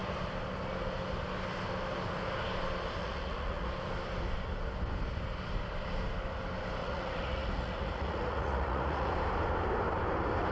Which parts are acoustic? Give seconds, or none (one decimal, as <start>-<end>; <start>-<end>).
0.0-3.0; 3.7-6.8; 9.1-10.5